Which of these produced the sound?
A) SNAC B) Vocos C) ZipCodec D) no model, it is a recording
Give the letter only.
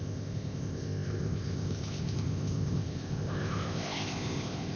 C